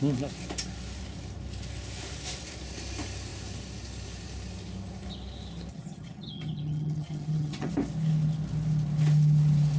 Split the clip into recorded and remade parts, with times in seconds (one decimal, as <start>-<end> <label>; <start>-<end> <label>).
0.0-5.7 recorded; 5.7-7.7 remade; 7.7-9.8 recorded